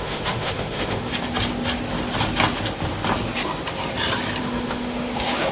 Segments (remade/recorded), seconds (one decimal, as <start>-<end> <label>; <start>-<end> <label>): 0.0-1.1 remade; 1.1-4.4 recorded; 4.4-5.5 remade